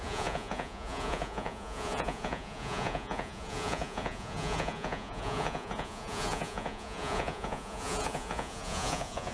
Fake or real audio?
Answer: fake